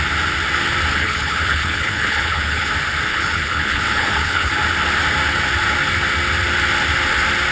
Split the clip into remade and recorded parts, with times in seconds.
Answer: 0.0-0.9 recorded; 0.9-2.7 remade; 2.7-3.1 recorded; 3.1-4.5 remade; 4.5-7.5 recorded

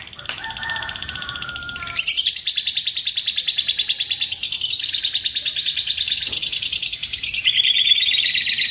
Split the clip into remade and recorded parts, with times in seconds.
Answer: 0.0-4.4 remade; 4.4-5.6 recorded; 5.6-8.7 remade

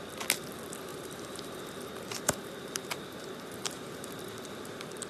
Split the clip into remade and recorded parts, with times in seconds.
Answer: 0.0-0.9 recorded; 0.9-4.0 remade; 4.0-5.1 recorded